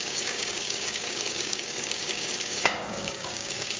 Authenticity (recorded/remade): remade